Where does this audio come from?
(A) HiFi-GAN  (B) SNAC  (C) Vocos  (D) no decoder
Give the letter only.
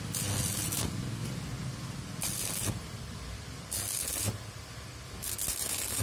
D